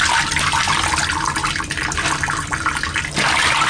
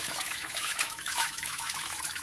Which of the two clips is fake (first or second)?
second